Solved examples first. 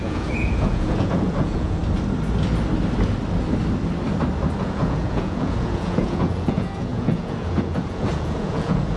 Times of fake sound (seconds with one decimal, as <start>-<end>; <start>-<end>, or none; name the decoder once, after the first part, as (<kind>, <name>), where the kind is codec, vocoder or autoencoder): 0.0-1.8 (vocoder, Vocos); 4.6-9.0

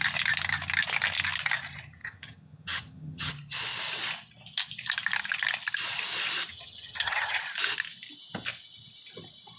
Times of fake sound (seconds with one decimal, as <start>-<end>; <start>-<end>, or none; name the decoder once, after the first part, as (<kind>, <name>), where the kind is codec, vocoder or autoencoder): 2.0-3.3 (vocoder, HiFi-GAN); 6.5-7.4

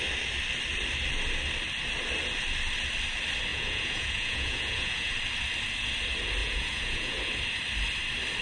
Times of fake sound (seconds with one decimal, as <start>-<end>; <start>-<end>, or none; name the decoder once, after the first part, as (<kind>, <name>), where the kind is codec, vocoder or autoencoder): 3.5-5.1 (vocoder, Vocos); 6.4-7.2